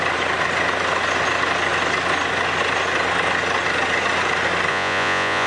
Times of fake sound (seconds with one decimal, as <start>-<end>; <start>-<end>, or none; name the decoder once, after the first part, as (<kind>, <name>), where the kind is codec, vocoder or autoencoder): 4.7-5.5 (vocoder, Vocos)